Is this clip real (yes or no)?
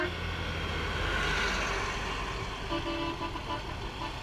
yes